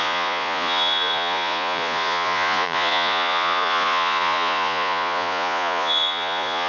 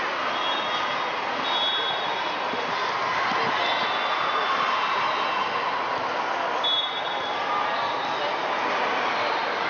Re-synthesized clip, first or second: first